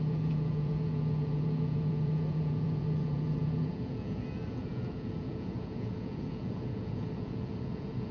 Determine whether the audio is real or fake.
fake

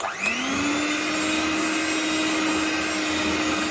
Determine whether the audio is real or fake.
real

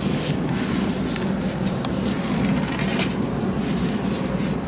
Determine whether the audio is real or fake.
real